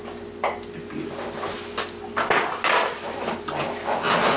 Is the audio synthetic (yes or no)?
no